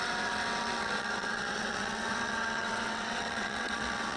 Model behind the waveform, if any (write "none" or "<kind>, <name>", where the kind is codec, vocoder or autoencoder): vocoder, WaveNeXt